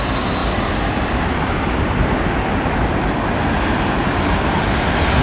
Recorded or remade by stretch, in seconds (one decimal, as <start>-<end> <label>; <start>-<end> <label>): 0.0-0.4 recorded; 0.4-3.0 remade; 3.0-5.2 recorded